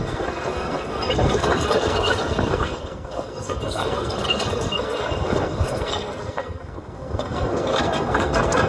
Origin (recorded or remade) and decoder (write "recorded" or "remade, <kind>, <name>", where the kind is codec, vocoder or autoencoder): remade, codec, SNAC